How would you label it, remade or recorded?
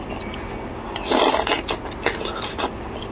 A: recorded